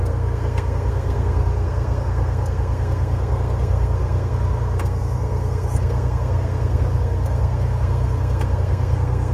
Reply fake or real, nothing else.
fake